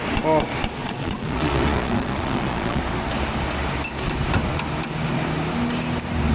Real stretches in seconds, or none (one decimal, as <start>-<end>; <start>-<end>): 0.0-0.8; 2.8-6.3